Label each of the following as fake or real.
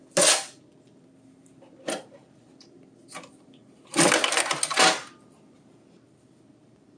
real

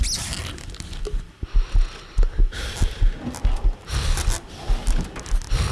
real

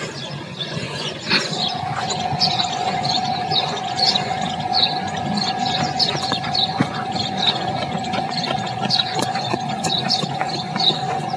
fake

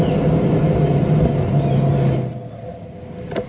real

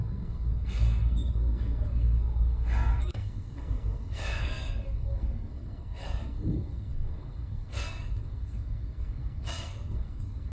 fake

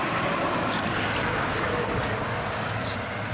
fake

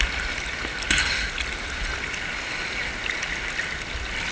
real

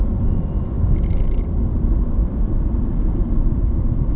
fake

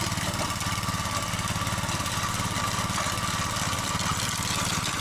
real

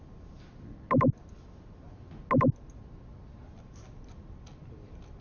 real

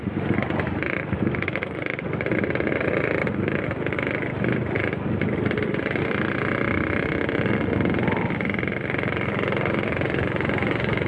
real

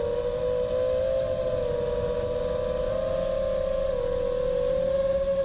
real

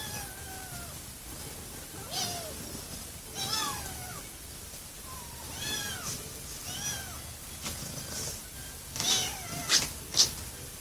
real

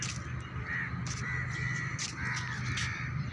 real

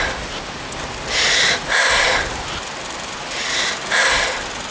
real